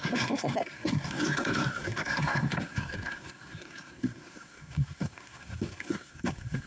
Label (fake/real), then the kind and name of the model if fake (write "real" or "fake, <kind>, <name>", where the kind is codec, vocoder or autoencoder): fake, codec, SNAC